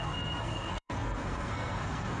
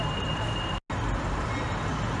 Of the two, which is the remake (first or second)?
first